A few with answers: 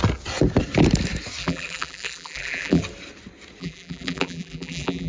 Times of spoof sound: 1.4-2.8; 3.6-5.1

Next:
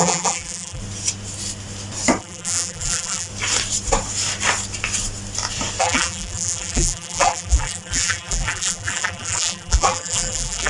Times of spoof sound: 0.0-0.8; 2.2-3.3; 5.8-10.7

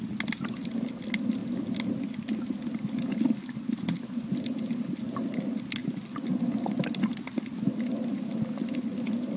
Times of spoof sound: none

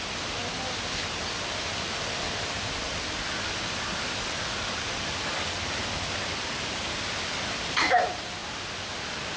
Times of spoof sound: none

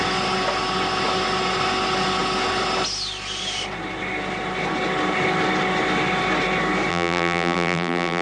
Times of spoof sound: 6.9-8.2

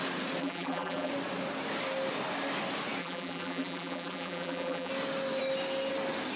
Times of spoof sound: 0.4-1.1; 3.0-4.9

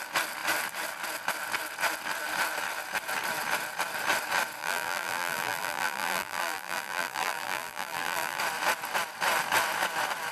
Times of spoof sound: 4.6-8.4

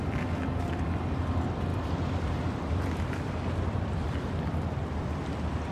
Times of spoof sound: 1.7-5.1